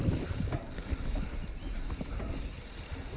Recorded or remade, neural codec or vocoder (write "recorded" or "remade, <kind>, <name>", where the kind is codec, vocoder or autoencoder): recorded